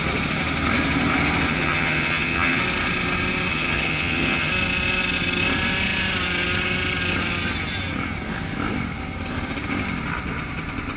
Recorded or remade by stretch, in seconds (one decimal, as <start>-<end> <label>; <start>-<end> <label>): 0.0-1.5 recorded; 1.5-2.6 remade; 2.6-3.5 recorded; 3.5-4.5 remade; 4.5-11.0 recorded